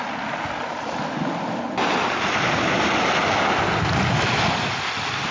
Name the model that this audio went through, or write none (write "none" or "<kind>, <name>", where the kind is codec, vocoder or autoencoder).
none